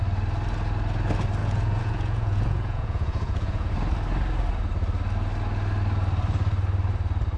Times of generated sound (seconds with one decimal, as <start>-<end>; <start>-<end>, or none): 1.4-3.7